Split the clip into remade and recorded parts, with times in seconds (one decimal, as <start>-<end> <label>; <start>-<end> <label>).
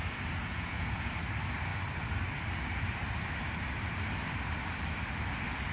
0.0-0.4 recorded; 0.4-1.1 remade; 1.1-5.7 recorded